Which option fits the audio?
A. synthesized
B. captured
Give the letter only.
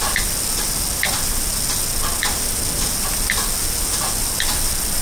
B